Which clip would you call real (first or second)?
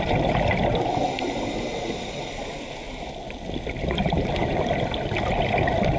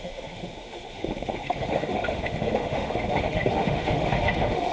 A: first